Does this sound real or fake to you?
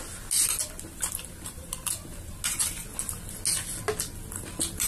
real